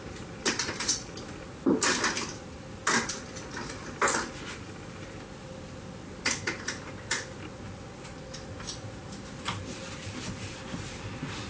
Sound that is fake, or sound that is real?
real